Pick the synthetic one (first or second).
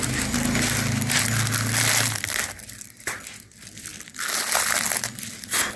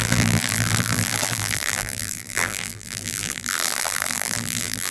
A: second